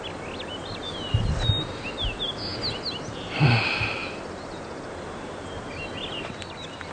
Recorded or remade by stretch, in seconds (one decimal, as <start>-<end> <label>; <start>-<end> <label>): 0.0-6.9 recorded